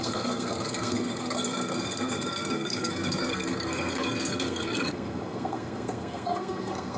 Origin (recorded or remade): remade